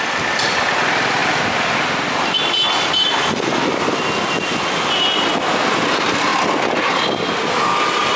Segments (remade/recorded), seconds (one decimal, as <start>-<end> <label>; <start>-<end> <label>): 0.0-8.2 recorded

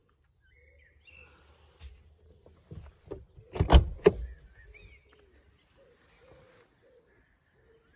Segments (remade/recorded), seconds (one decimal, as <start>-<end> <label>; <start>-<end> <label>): 0.0-8.0 recorded

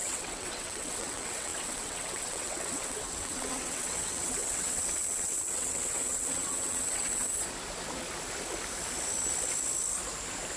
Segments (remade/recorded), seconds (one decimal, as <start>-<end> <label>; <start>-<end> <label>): 0.0-7.3 remade; 7.3-10.6 recorded

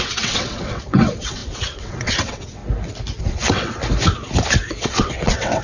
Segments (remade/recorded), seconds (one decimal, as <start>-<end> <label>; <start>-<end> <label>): 0.0-2.6 remade; 2.6-3.2 recorded; 3.2-3.8 remade; 3.8-4.8 recorded; 4.8-5.6 remade

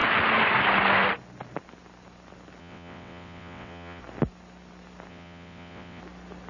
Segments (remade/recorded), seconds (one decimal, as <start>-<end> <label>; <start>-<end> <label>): 0.0-2.6 recorded; 2.6-4.0 remade; 4.0-5.1 recorded; 5.1-6.0 remade; 6.0-6.5 recorded